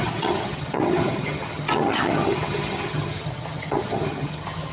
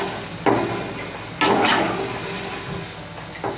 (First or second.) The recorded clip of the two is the second